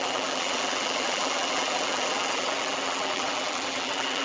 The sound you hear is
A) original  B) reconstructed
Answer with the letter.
B